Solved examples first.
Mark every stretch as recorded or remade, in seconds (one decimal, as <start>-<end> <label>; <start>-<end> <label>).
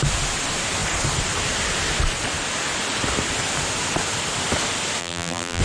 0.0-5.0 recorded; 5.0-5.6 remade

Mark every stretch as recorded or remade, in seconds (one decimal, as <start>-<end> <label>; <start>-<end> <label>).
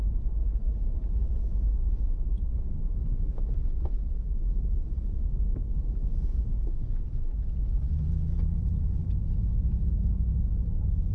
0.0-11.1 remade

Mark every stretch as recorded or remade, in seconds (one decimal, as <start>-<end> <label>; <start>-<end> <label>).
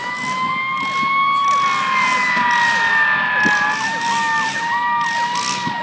0.0-5.8 recorded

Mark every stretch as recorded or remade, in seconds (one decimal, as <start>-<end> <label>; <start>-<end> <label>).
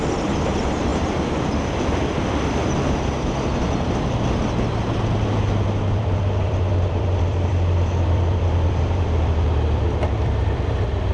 0.0-2.6 remade; 2.6-5.9 recorded; 5.9-11.1 remade